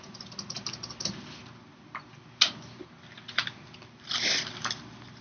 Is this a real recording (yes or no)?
yes